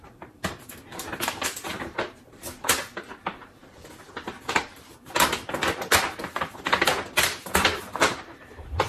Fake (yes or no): yes